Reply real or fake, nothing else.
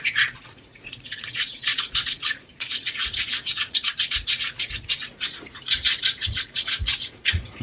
fake